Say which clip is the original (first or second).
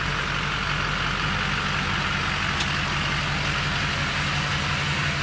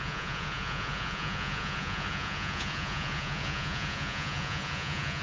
first